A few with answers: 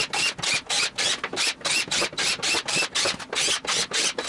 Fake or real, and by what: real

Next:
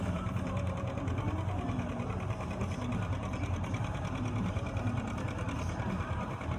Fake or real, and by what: fake, vocoder, BigVGAN v2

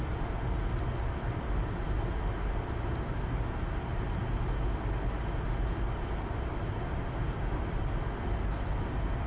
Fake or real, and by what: real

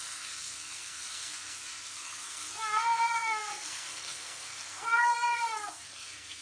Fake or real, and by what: fake, codec, SNAC